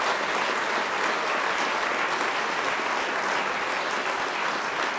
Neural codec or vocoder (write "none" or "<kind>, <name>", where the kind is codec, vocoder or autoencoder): none